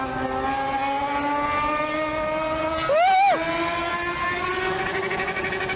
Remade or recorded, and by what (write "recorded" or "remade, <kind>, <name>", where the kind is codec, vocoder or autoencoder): recorded